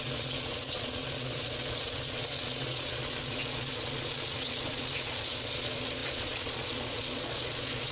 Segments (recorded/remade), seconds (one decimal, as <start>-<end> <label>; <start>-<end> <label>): 0.0-7.9 remade